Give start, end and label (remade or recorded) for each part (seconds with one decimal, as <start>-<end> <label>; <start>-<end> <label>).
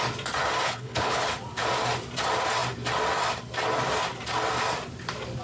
0.0-0.6 recorded; 0.6-1.2 remade; 1.2-5.4 recorded